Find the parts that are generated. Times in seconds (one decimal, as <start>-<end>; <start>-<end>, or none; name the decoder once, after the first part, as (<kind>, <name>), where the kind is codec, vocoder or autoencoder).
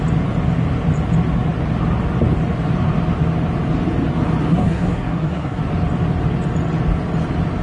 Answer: 4.5-5.6 (codec, SNAC)